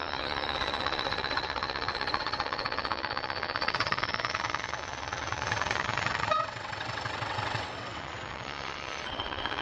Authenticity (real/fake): fake